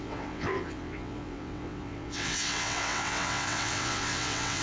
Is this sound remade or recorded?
remade